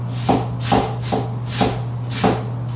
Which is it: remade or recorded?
recorded